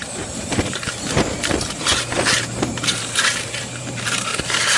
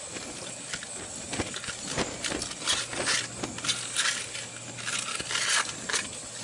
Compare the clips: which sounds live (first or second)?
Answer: second